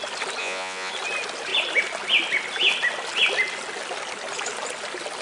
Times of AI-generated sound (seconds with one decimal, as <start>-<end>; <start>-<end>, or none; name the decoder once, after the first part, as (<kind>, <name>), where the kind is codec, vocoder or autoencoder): 0.4-0.9 (vocoder, Vocos)